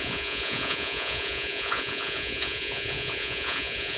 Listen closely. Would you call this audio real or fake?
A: fake